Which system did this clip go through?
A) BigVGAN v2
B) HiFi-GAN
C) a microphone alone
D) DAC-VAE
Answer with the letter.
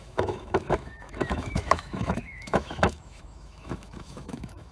D